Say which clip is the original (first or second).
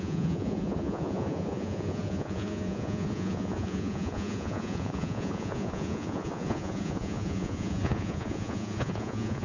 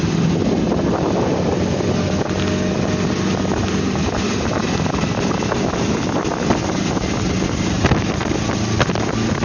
second